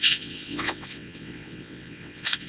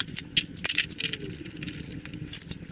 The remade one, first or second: first